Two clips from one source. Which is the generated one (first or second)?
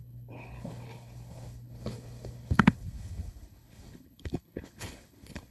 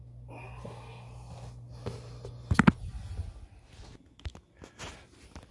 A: first